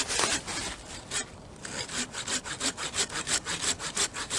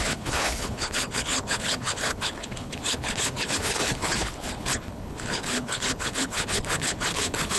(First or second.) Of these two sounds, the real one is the first